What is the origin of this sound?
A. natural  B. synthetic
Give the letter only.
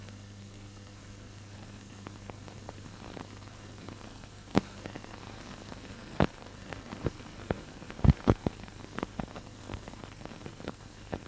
B